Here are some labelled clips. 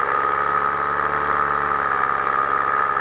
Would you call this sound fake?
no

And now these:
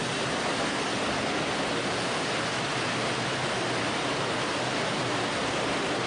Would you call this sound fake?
no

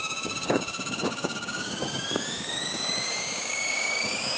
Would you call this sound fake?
yes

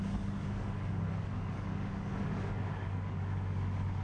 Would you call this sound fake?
yes